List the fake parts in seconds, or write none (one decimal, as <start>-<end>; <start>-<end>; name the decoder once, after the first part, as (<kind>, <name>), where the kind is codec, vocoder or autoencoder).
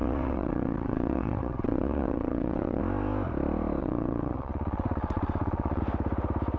0.0-2.8 (vocoder, WaveNeXt); 3.8-5.8